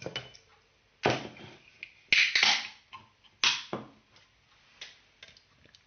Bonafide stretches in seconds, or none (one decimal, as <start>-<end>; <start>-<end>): 0.0-5.9